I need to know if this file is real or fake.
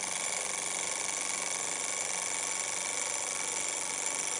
real